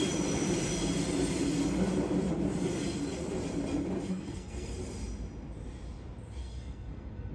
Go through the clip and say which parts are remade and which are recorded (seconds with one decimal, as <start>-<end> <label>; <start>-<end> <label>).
0.0-4.1 recorded; 4.1-4.7 remade; 4.7-6.4 recorded; 6.4-7.3 remade